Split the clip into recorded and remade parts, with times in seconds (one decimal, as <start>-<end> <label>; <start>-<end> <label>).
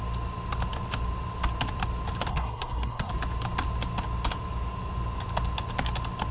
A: 0.0-2.3 recorded; 2.3-3.1 remade; 3.1-6.3 recorded